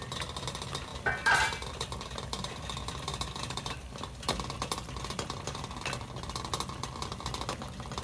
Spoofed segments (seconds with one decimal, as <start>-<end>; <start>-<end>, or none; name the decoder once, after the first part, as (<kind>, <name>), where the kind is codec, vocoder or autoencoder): 0.9-5.7 (vocoder, BigVGAN v2)